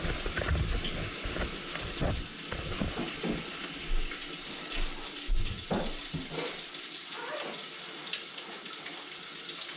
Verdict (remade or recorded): recorded